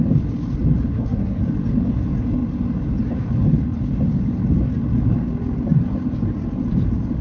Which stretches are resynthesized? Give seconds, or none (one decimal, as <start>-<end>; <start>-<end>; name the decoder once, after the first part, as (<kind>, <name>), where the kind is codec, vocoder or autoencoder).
0.9-1.4 (codec, SNAC)